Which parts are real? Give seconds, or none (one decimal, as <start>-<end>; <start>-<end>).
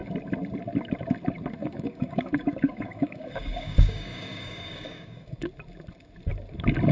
0.0-1.6; 5.5-6.9